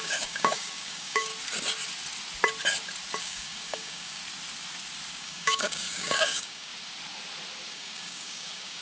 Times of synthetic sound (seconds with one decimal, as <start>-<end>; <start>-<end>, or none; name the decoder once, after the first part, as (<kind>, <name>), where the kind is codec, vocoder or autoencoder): 0.0-1.3 (codec, DAC); 3.2-4.2; 5.1-6.7; 7.7-8.8